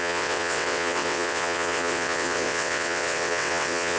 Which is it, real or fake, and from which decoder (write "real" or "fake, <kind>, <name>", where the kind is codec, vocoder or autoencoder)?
fake, vocoder, WaveNeXt